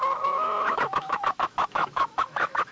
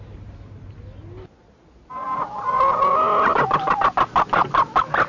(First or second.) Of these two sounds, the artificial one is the first